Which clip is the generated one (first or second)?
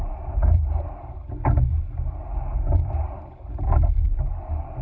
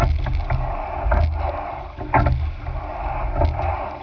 first